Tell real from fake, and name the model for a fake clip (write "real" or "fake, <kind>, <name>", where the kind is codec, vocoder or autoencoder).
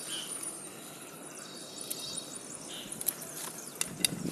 real